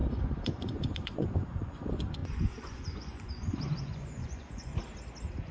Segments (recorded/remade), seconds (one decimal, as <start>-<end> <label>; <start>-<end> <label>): 0.0-4.7 remade; 4.7-5.5 recorded